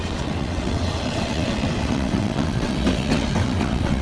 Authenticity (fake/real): fake